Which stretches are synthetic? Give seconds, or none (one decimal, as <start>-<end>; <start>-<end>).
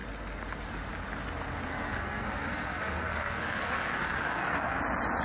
1.7-4.8